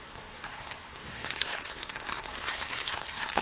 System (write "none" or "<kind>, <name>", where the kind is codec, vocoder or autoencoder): codec, SNAC